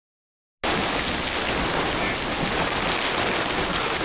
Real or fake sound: real